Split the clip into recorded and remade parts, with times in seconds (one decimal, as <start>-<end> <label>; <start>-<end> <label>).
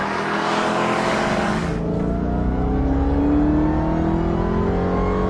0.0-3.2 remade; 3.2-5.3 recorded